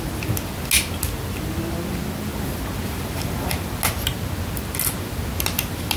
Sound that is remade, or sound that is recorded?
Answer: recorded